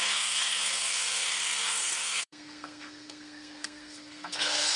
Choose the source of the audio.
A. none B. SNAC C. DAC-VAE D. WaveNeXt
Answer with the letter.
B